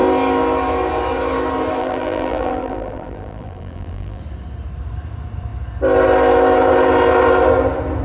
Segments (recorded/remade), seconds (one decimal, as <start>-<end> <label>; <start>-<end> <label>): 0.0-1.8 recorded; 1.8-4.2 remade; 4.2-8.0 recorded